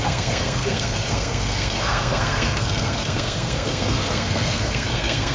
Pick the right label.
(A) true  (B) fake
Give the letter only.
B